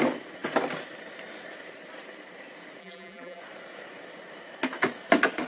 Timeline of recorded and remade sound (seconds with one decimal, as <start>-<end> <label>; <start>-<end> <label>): 0.0-2.8 recorded; 2.8-3.4 remade; 3.4-5.5 recorded

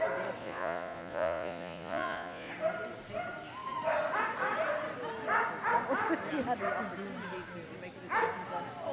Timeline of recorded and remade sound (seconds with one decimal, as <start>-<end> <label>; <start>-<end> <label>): 0.0-0.4 recorded; 0.4-2.5 remade; 2.5-8.9 recorded

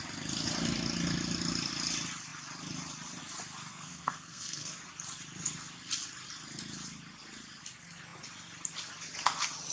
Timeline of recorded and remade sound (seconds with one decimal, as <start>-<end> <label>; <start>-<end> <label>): 0.0-3.7 recorded; 3.7-4.8 remade; 4.8-9.7 recorded

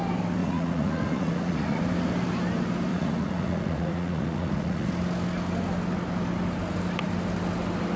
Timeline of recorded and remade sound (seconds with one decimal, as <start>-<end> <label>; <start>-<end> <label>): 0.0-0.4 recorded; 0.4-1.8 remade; 1.8-2.9 recorded; 2.9-4.9 remade; 4.9-8.0 recorded

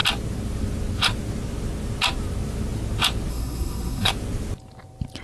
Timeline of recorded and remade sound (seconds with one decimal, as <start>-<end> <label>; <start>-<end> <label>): 0.0-3.3 recorded; 3.3-4.1 remade; 4.1-5.2 recorded

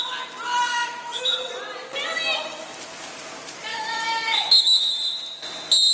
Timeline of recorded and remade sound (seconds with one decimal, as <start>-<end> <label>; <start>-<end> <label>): 0.0-0.7 recorded; 0.7-1.4 remade; 1.4-3.7 recorded; 3.7-4.9 remade; 4.9-5.9 recorded

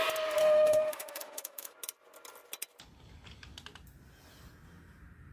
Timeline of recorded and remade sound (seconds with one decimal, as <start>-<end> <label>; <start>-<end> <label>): 0.0-0.4 recorded; 0.4-1.7 remade; 1.7-5.3 recorded